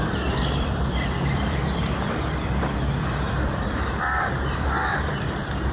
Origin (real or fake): fake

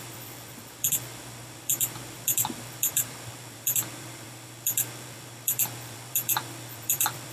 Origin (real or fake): fake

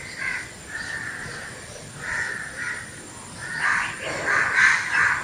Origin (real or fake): fake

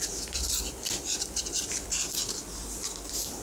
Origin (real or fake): fake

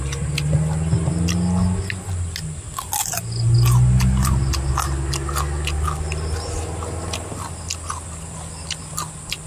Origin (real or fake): real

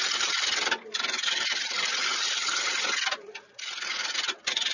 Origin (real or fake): fake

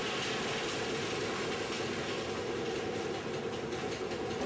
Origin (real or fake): real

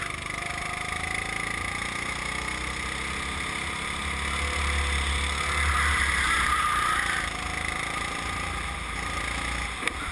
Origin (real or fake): real